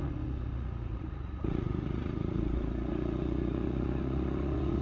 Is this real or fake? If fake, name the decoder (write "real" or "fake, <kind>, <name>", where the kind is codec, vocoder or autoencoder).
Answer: fake, vocoder, Vocos